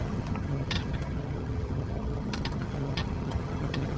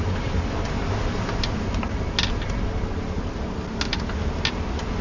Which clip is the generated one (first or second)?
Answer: first